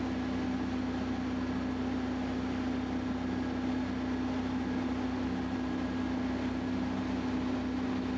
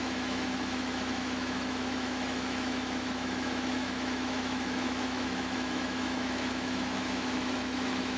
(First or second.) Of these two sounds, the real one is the first